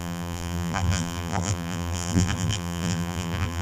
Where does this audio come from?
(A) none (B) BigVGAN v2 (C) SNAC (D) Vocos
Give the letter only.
B